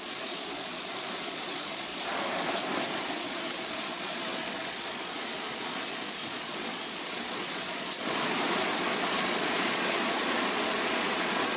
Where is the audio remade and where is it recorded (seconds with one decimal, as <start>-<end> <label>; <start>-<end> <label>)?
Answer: 0.0-11.6 remade